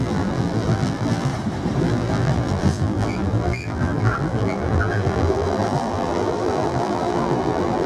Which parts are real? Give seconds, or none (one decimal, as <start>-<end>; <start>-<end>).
1.3-1.8